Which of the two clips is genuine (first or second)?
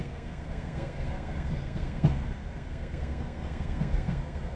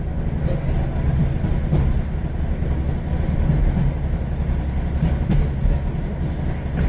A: second